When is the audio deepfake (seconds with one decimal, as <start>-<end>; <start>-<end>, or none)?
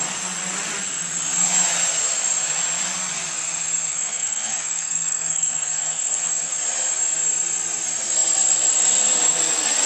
3.9-6.5